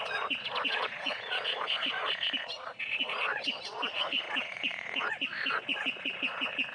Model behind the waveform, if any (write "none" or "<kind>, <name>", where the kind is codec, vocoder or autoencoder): vocoder, Vocos